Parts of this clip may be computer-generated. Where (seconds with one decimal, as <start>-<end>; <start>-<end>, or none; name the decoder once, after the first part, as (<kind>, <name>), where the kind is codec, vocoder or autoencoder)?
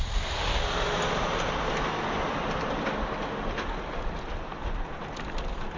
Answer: none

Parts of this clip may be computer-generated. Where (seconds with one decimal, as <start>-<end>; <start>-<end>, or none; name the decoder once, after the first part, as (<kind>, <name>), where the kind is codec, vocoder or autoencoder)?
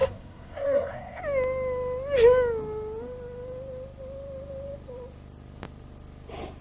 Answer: 0.0-1.2 (codec, SNAC)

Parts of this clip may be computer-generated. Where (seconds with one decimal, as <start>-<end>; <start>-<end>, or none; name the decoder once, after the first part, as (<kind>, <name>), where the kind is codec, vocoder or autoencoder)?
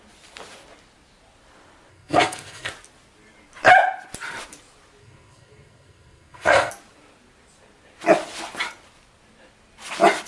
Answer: 1.9-2.7 (codec, SNAC); 5.0-6.7